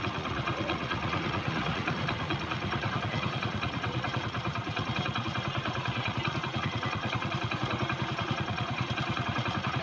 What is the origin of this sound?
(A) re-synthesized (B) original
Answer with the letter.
A